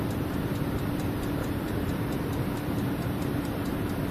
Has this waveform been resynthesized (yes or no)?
yes